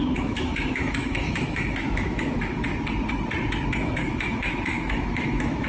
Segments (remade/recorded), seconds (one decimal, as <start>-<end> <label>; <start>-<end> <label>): 0.0-2.7 remade; 2.7-3.7 recorded; 3.7-5.7 remade